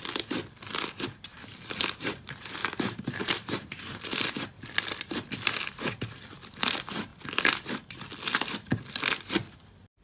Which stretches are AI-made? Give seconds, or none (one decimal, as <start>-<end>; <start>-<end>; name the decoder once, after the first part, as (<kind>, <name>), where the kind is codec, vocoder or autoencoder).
1.3-4.3 (vocoder, BigVGAN v2)